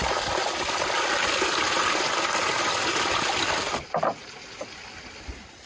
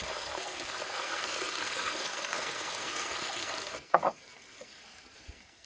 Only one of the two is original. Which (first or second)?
first